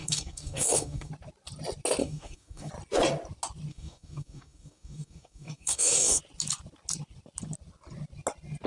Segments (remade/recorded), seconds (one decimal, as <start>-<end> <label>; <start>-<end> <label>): 0.0-1.1 remade; 1.1-2.0 recorded; 2.0-2.7 remade; 2.7-3.7 recorded; 3.7-6.2 remade; 6.2-8.7 recorded